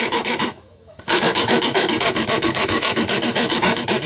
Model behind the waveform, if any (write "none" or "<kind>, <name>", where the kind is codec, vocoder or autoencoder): autoencoder, DAC-VAE